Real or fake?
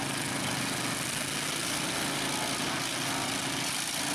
real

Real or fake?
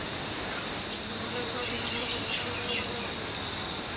real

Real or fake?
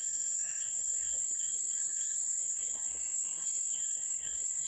fake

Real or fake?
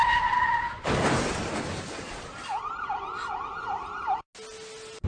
real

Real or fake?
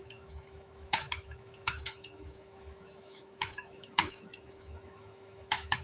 fake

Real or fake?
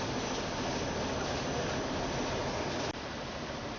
real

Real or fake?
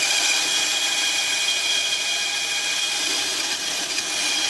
real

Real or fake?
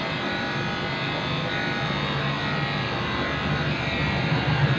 real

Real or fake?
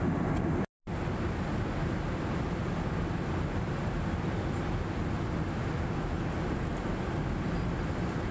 real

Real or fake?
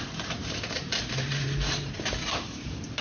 fake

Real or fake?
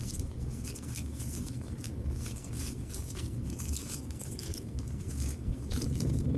fake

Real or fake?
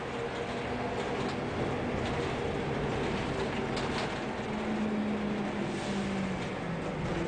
real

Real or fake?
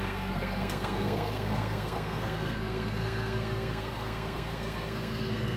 fake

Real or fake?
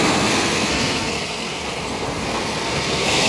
fake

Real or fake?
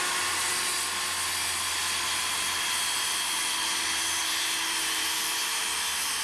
real